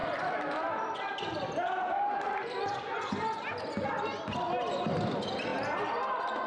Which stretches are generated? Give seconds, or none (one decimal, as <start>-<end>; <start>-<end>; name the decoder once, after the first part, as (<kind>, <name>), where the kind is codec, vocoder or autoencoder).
none